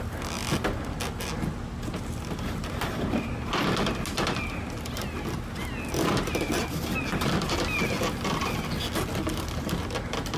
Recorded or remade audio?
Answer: recorded